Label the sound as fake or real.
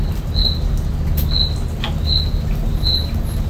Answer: real